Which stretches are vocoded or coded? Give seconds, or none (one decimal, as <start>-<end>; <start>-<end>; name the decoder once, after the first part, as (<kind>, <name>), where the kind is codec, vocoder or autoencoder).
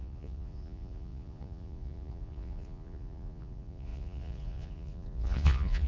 0.0-5.9 (vocoder, Vocos)